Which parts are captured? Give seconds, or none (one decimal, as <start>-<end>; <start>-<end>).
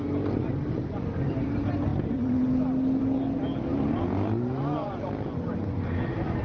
0.0-6.4